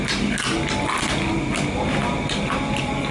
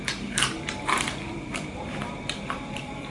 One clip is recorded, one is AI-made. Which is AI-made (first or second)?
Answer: second